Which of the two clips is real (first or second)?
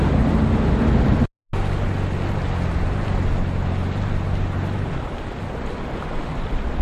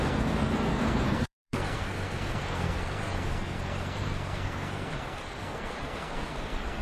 first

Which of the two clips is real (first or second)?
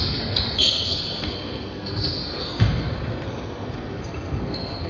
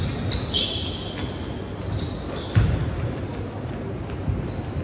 second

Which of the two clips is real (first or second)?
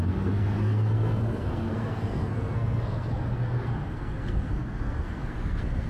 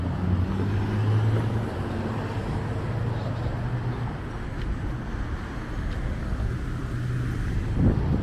second